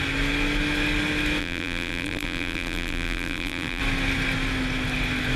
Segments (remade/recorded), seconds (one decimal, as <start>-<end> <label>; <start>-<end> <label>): 0.0-1.4 recorded; 1.4-3.8 remade; 3.8-5.4 recorded